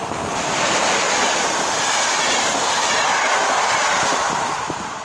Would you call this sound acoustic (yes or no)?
yes